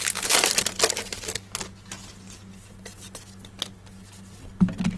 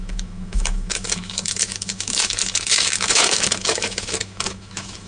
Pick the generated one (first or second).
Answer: second